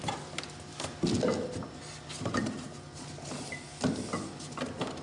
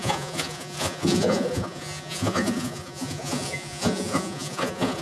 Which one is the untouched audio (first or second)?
first